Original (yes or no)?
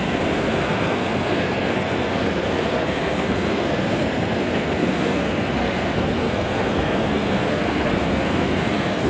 no